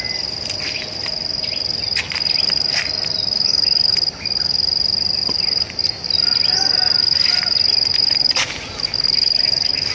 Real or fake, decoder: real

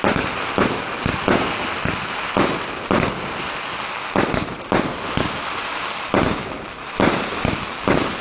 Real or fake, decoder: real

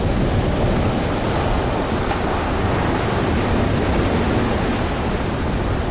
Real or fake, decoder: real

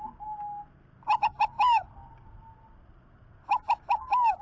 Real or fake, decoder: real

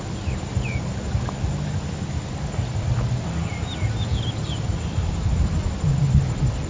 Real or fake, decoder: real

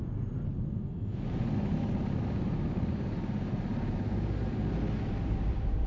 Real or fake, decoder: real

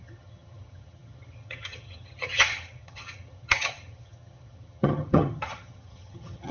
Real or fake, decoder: fake, vocoder, HiFi-GAN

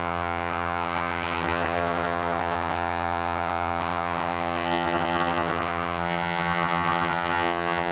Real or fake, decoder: fake, vocoder, HiFi-GAN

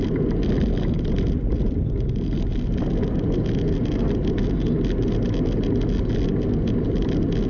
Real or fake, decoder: real